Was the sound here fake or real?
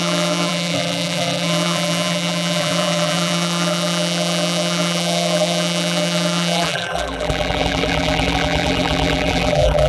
fake